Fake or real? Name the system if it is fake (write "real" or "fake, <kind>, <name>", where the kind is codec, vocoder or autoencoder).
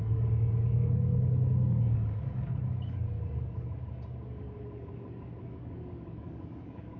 fake, codec, DAC